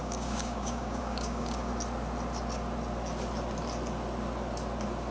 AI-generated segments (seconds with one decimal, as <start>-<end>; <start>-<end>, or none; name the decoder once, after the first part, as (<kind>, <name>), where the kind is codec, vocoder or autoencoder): 0.0-1.7 (codec, DAC)